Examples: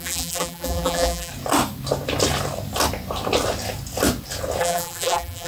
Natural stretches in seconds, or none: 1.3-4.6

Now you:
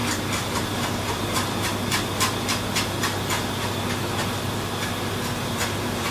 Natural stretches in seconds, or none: 0.0-0.5; 1.7-5.4

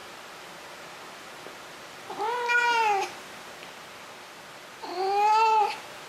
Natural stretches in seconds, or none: 2.2-6.1

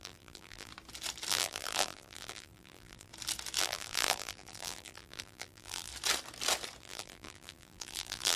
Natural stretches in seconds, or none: 0.7-1.3; 3.1-3.6; 5.9-6.8

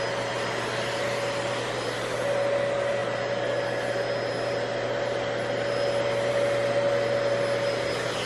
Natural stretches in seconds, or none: 0.0-8.3